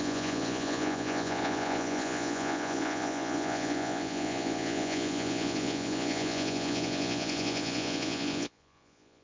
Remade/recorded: remade